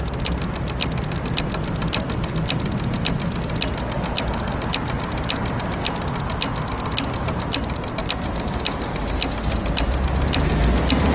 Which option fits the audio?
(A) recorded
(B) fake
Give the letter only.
A